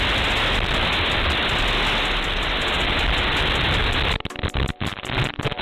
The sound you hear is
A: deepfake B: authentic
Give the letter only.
B